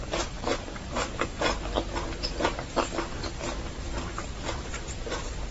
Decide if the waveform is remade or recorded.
recorded